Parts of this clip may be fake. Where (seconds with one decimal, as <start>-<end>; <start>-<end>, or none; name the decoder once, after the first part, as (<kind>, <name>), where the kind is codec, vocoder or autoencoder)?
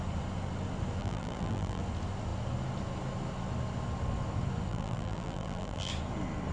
1.0-1.8 (vocoder, BigVGAN v2); 4.7-5.9